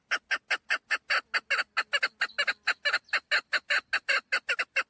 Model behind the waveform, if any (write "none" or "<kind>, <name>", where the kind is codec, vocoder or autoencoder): none